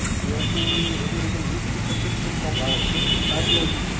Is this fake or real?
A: real